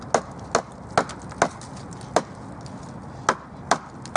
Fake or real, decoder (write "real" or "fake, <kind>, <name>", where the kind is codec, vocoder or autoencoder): real